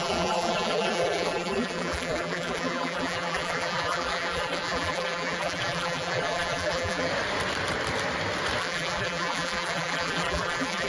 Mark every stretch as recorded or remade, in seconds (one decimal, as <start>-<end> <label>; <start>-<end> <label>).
0.0-7.1 remade; 7.1-8.6 recorded; 8.6-10.9 remade